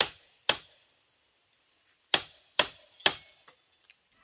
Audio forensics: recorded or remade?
recorded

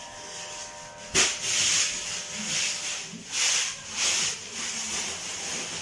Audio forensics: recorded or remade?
recorded